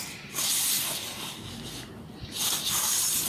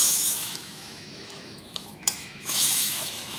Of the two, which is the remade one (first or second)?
second